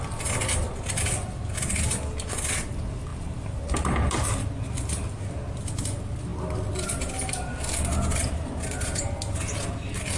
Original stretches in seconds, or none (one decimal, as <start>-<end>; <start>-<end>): 0.0-10.2